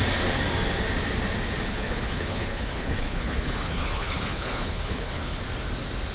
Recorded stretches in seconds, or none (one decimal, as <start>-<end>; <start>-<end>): 0.0-1.7; 5.4-6.1

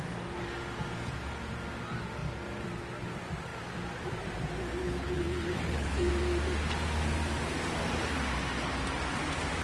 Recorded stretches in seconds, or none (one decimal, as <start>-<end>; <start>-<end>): 0.0-4.8; 6.1-9.6

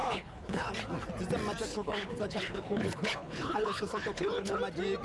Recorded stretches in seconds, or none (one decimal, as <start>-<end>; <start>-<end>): 0.7-1.7; 4.6-5.0

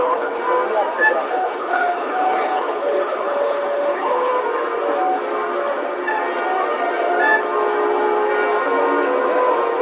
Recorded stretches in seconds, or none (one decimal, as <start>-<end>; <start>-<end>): 0.4-1.2; 4.3-9.8

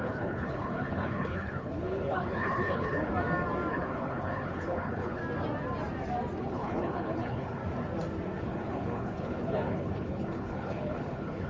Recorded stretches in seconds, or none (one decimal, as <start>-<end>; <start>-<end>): 3.1-3.7; 5.2-6.4; 7.6-8.4

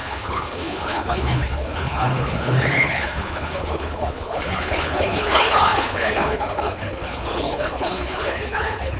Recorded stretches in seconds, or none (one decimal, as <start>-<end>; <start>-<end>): none

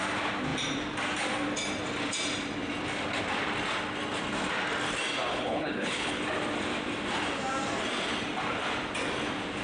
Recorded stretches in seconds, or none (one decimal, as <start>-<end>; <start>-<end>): 0.0-5.3; 6.2-9.6

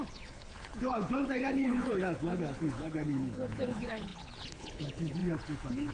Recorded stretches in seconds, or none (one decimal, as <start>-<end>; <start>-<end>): none